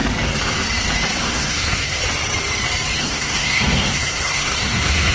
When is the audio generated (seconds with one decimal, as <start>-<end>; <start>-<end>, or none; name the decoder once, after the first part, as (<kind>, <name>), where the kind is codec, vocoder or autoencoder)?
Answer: 1.2-2.0 (codec, SNAC); 3.0-5.1